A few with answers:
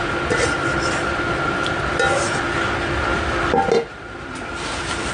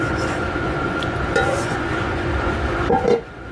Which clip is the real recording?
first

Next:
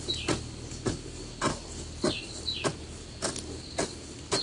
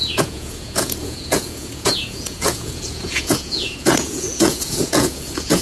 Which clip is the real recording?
first